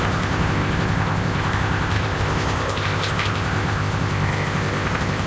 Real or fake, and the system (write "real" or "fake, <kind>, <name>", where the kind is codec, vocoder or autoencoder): fake, codec, ZipCodec